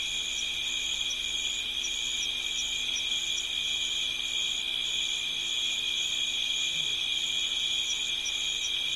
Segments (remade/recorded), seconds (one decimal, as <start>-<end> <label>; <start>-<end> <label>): 0.0-9.0 recorded